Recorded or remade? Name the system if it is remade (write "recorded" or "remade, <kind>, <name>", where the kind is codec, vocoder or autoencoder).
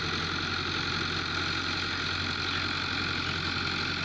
recorded